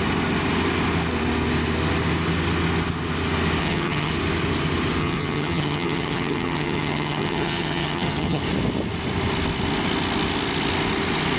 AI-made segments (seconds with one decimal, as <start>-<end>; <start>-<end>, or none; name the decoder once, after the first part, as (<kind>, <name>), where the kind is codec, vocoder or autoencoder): 3.6-4.1 (vocoder, HiFi-GAN); 5.0-8.4